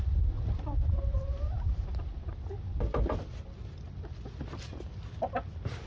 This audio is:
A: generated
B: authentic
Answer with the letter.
B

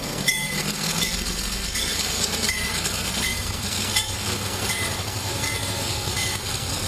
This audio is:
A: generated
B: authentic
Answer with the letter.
A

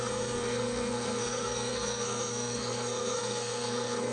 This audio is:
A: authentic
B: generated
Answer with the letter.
B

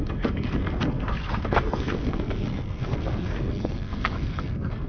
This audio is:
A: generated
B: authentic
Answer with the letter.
A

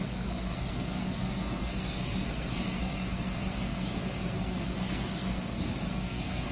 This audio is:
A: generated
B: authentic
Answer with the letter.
A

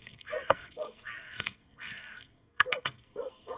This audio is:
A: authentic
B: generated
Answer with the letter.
B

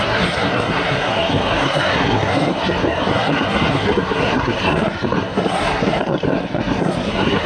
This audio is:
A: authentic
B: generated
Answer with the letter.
B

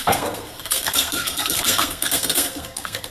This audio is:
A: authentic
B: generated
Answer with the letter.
B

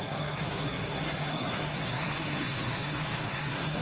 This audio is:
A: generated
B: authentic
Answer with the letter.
A